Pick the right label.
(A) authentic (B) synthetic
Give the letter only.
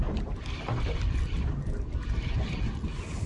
A